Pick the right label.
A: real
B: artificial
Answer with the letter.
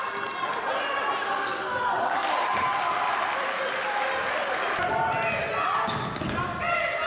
A